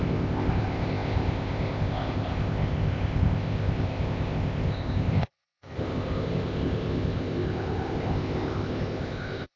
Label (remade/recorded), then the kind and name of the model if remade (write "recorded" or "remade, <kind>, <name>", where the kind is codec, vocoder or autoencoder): remade, codec, ZipCodec